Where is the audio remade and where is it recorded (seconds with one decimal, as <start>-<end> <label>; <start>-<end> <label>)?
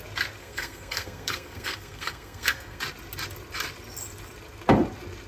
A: 0.0-0.4 recorded; 0.4-2.8 remade; 2.8-5.3 recorded